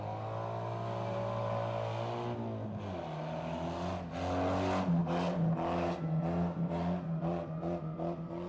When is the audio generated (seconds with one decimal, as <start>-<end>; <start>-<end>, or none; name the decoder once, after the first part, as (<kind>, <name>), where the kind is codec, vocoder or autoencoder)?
none